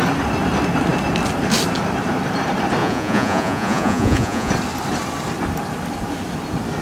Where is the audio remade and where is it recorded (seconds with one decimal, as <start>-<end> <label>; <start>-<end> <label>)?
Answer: 0.0-2.8 recorded; 2.8-4.5 remade; 4.5-6.8 recorded

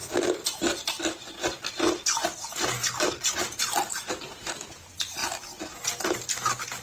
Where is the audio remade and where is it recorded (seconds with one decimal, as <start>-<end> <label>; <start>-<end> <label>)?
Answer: 0.0-6.8 recorded

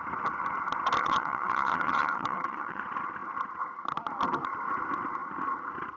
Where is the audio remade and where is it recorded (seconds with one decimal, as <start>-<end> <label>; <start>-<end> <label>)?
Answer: 0.0-1.0 recorded; 1.0-2.8 remade; 2.8-6.0 recorded